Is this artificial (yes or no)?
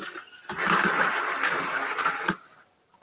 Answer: no